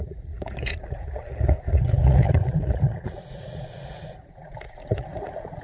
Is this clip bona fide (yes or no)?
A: no